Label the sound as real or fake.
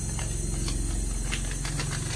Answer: real